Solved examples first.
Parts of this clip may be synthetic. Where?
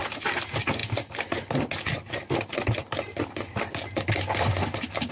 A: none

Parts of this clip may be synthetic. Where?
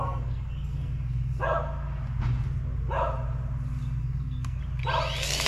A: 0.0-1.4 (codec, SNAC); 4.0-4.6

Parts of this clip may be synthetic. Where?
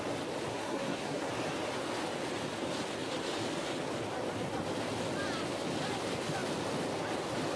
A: 0.5-1.3 (codec, SNAC)